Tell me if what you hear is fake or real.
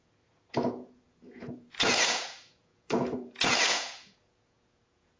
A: fake